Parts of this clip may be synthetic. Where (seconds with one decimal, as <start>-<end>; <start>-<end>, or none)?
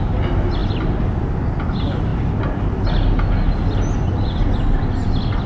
none